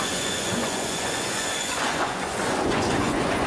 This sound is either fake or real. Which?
fake